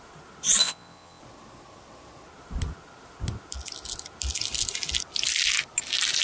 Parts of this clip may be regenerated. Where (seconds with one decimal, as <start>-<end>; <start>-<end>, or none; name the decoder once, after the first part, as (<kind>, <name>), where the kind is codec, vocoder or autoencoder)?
0.6-1.2 (vocoder, WaveNeXt)